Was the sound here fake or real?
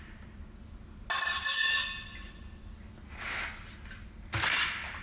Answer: real